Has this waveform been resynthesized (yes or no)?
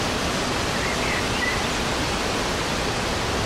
no